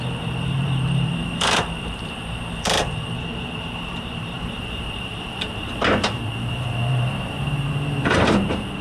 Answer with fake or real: fake